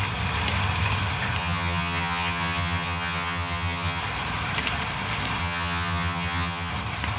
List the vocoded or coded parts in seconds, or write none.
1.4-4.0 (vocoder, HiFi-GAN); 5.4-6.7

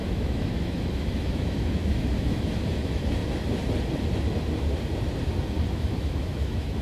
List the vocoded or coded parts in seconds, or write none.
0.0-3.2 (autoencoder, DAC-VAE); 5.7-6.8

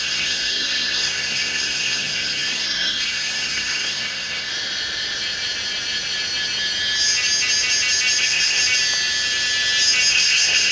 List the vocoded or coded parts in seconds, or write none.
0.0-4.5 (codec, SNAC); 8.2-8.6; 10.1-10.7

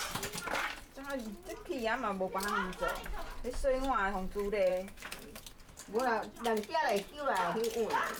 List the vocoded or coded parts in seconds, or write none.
4.7-5.4 (autoencoder, DAC-VAE)